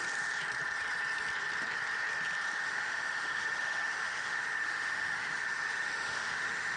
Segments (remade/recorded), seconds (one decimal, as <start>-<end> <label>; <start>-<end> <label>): 0.0-2.6 recorded; 2.6-6.8 remade